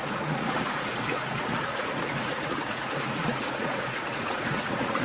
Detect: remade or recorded remade